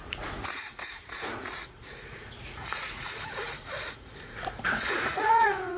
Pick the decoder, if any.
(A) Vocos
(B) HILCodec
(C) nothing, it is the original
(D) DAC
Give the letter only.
A